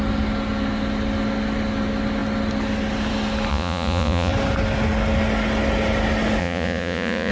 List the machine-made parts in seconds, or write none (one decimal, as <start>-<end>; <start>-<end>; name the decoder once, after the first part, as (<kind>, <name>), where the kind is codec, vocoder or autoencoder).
3.5-4.3 (vocoder, Vocos); 6.4-7.3